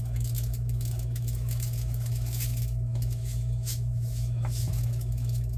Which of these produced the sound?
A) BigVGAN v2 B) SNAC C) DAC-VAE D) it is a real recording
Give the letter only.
C